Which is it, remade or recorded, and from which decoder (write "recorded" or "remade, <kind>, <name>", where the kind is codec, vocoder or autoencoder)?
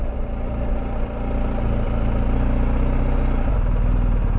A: recorded